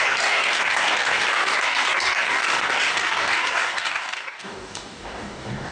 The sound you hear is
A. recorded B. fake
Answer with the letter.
B